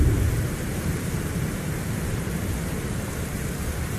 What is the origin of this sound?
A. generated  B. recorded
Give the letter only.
A